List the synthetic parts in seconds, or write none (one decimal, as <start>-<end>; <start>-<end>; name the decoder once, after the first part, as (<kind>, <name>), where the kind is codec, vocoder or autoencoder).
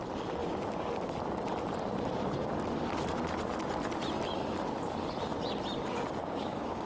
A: 6.2-6.9 (codec, DAC)